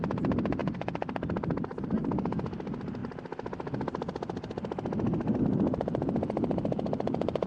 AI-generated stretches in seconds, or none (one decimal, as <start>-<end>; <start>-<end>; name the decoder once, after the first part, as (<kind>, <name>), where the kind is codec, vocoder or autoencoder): none